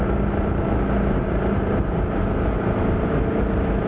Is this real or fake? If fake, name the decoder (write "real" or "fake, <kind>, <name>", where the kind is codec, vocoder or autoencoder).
real